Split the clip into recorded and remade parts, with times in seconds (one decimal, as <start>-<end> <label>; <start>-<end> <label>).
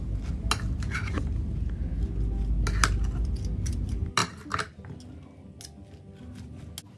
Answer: 0.0-7.0 recorded